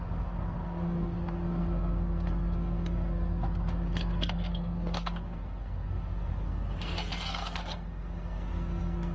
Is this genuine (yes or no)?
no